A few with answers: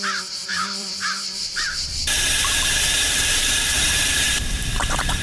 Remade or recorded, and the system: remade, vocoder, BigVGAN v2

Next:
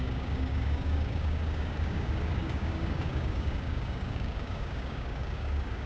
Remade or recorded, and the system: remade, codec, DAC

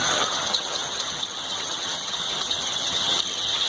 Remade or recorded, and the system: remade, vocoder, HiFi-GAN